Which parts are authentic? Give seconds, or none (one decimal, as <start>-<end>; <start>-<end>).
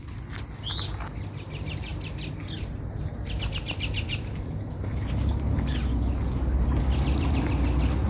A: 0.0-8.1